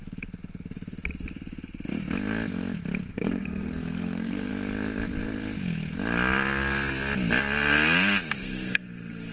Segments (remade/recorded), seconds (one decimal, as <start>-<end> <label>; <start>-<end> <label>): 0.0-3.1 recorded; 3.1-4.5 remade; 4.5-8.4 recorded; 8.4-9.3 remade